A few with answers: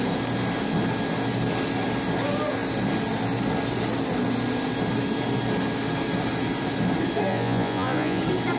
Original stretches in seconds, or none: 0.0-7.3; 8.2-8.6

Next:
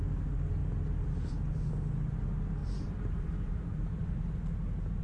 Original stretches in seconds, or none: 0.0-2.6; 4.5-5.0

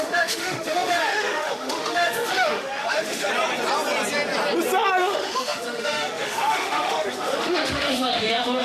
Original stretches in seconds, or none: 3.3-5.0

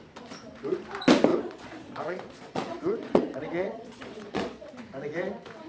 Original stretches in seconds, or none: 0.0-1.3; 4.7-5.7